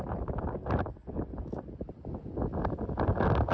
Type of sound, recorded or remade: recorded